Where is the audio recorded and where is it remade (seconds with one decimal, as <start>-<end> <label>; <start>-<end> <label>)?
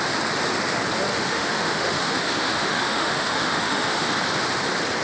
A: 0.0-1.1 recorded; 1.1-4.1 remade; 4.1-5.0 recorded